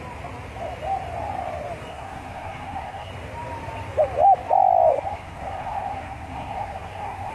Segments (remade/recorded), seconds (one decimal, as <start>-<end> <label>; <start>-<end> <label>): 0.0-1.9 recorded; 1.9-3.1 remade; 3.1-4.9 recorded; 4.9-7.3 remade